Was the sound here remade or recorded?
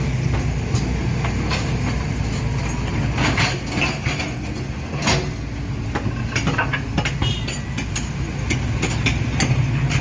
recorded